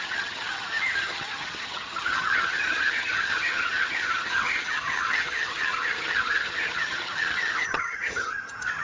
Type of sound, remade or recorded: remade